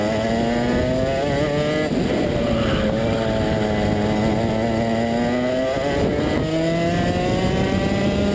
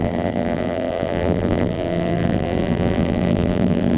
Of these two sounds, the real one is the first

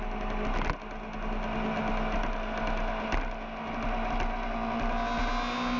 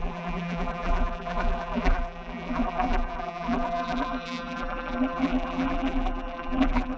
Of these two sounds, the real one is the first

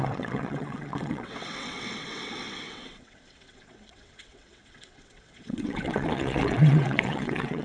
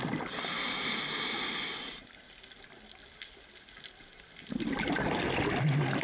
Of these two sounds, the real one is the second